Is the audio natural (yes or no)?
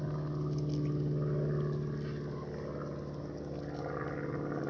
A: yes